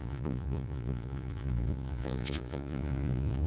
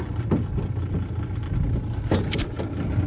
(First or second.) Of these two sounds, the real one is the second